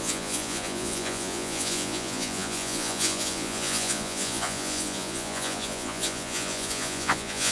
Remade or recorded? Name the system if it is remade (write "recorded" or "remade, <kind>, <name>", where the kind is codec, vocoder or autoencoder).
remade, vocoder, Vocos